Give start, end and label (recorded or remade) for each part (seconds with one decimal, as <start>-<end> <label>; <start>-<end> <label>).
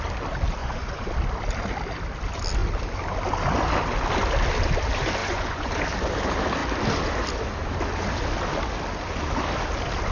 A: 0.0-0.6 recorded; 0.6-1.1 remade; 1.1-5.2 recorded; 5.2-5.7 remade; 5.7-10.1 recorded